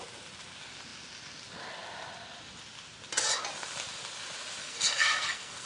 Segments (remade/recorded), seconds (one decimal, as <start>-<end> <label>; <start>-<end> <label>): 0.0-4.6 recorded; 4.6-5.7 remade